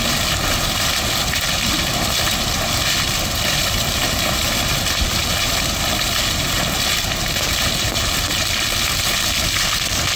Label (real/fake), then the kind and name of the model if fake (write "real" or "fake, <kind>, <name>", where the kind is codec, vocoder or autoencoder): real